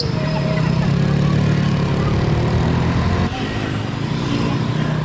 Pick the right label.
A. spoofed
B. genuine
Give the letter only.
B